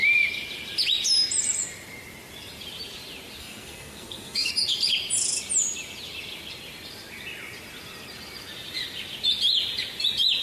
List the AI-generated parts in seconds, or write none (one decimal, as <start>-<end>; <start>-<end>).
3.4-4.5